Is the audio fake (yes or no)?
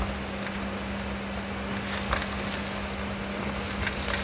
no